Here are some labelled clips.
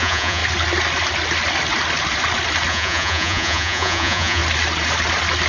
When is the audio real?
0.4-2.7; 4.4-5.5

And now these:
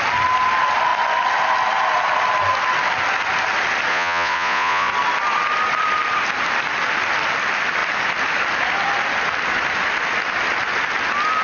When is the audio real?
0.0-3.9; 4.9-11.4

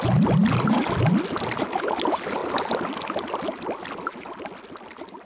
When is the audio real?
0.0-5.3

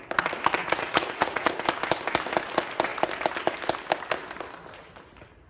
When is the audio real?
0.0-0.6; 1.5-5.5

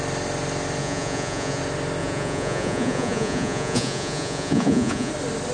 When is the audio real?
0.0-0.8; 1.6-2.0; 5.1-5.5

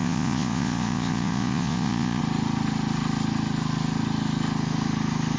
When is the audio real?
2.2-5.4